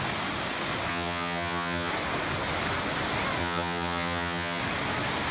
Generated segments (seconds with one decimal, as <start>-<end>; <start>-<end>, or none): 0.9-1.9; 3.4-4.6